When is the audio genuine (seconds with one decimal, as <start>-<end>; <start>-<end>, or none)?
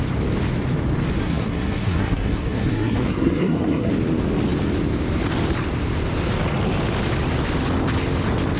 0.0-1.2; 3.9-8.6